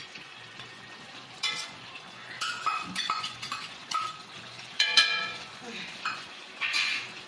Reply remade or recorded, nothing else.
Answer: remade